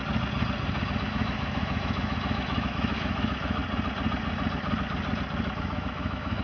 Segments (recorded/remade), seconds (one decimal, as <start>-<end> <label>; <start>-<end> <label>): 0.0-1.0 recorded; 1.0-3.6 remade; 3.6-5.6 recorded; 5.6-6.4 remade

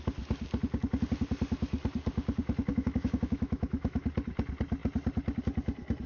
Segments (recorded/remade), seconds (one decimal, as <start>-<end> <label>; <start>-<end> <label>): 0.0-2.7 recorded; 2.7-4.0 remade; 4.0-6.1 recorded